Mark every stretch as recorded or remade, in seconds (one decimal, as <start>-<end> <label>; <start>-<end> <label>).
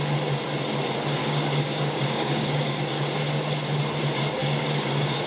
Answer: 0.0-1.2 recorded; 1.2-3.1 remade; 3.1-4.4 recorded; 4.4-5.3 remade